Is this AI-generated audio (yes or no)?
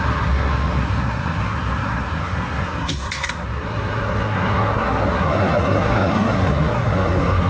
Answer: yes